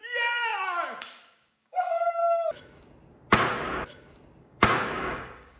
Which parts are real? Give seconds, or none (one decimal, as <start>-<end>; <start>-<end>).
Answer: 0.5-1.0; 2.2-4.4